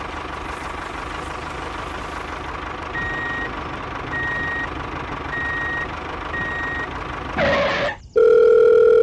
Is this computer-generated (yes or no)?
no